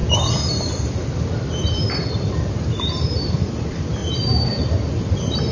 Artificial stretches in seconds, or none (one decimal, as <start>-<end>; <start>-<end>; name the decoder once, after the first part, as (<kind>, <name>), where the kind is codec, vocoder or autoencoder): 0.0-4.0 (vocoder, BigVGAN v2); 5.0-5.5